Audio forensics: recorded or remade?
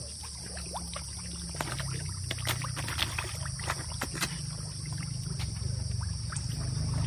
recorded